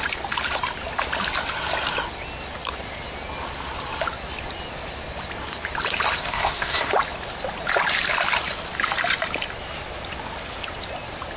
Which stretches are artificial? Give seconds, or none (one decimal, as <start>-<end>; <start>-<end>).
6.2-6.9